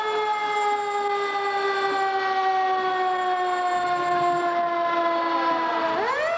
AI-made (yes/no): no